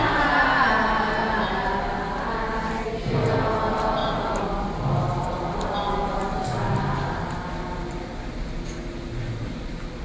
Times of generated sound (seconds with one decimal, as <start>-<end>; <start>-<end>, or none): none